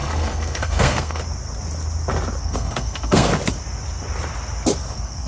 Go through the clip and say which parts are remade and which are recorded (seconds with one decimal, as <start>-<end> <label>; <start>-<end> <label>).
0.0-1.2 remade; 1.2-2.4 recorded; 2.4-3.3 remade; 3.3-4.8 recorded; 4.8-5.3 remade

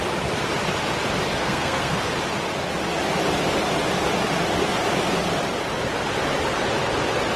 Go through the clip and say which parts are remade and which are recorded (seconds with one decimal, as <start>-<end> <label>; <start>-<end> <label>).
0.0-1.4 recorded; 1.4-2.1 remade; 2.1-7.4 recorded

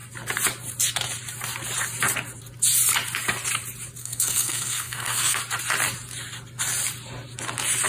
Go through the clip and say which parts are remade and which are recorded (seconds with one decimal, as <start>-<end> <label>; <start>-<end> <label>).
0.0-4.0 recorded; 4.0-5.4 remade; 5.4-7.9 recorded

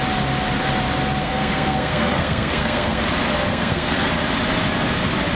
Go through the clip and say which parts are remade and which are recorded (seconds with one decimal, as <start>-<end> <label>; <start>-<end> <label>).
0.0-1.2 recorded; 1.2-3.0 remade; 3.0-3.5 recorded; 3.5-4.1 remade; 4.1-5.4 recorded

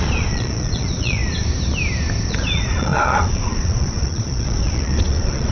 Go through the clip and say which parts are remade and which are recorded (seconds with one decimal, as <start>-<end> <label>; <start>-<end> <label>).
0.0-1.2 remade; 1.2-2.3 recorded; 2.3-5.5 remade